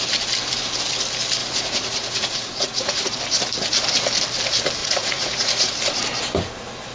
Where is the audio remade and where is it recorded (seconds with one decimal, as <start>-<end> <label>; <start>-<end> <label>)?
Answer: 0.0-1.4 recorded; 1.4-3.1 remade; 3.1-4.8 recorded; 4.8-5.7 remade; 5.7-6.9 recorded